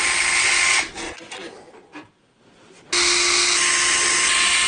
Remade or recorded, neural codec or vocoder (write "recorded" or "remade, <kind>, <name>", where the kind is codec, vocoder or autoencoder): recorded